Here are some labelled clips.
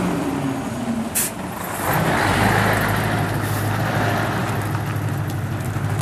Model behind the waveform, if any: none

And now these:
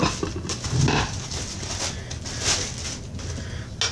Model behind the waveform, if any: none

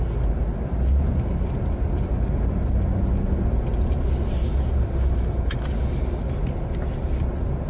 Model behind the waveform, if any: none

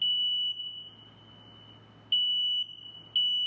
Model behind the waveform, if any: none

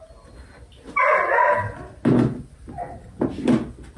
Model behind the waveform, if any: none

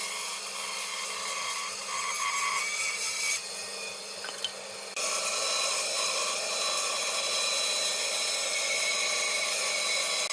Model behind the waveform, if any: none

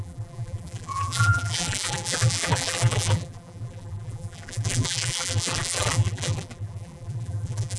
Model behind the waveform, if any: vocoder, BigVGAN v2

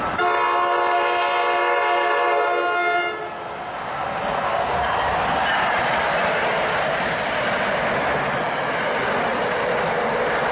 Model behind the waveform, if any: none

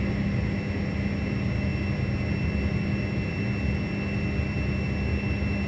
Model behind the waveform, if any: none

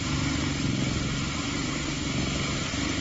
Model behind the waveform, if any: none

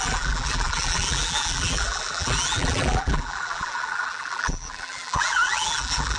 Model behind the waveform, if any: vocoder, BigVGAN v2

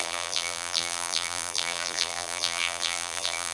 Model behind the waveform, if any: vocoder, BigVGAN v2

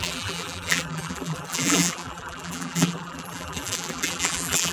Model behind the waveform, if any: vocoder, BigVGAN v2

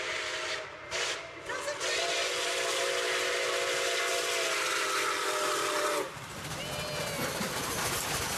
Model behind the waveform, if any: none